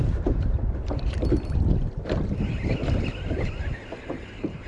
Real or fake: fake